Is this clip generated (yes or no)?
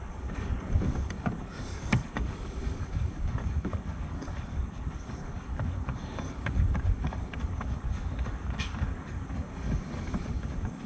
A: yes